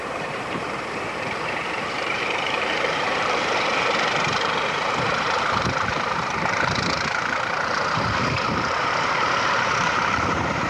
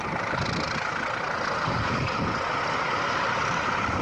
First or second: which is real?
second